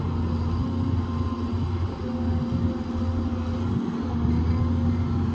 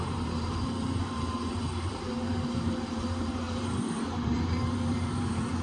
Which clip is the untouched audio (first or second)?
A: first